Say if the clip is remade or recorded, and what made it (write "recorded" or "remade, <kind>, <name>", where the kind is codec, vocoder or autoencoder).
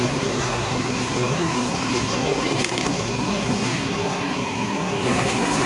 remade, codec, SNAC